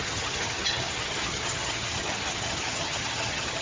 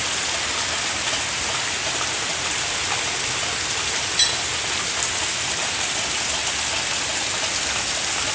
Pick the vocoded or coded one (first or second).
first